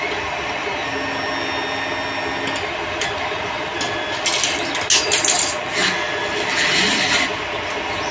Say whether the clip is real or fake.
real